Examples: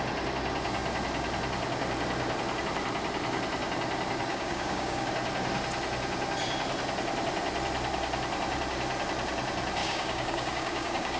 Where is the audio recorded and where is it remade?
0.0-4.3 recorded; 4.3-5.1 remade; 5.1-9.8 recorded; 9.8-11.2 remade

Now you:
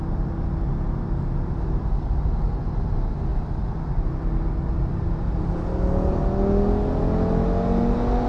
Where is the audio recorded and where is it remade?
0.0-8.3 recorded

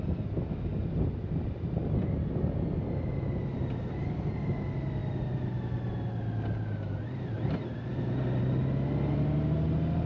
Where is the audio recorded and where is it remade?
0.0-10.1 recorded

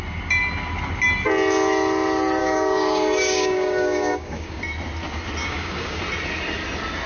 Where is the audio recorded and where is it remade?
0.0-2.4 recorded; 2.4-4.6 remade; 4.6-5.4 recorded; 5.4-6.0 remade; 6.0-7.1 recorded

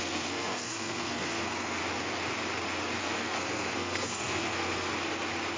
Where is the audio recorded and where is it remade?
0.0-1.8 remade; 1.8-3.0 recorded; 3.0-4.9 remade; 4.9-5.6 recorded